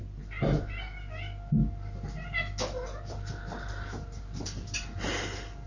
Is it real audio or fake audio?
real